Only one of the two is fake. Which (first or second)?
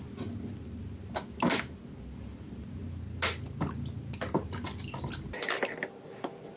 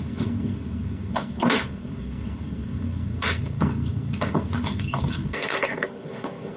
second